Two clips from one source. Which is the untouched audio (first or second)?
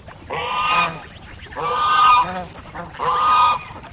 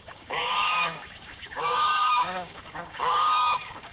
first